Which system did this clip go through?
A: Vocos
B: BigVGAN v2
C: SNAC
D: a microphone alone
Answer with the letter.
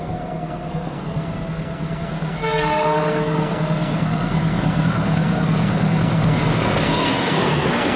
C